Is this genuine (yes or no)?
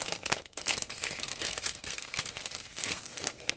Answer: no